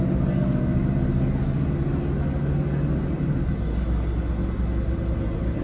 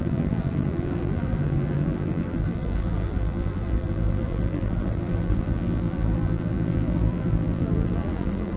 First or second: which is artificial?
second